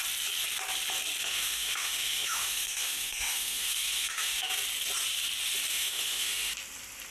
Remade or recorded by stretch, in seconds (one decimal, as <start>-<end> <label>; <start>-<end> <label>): 0.0-1.2 recorded; 1.2-4.5 remade; 4.5-5.7 recorded; 5.7-6.5 remade; 6.5-7.1 recorded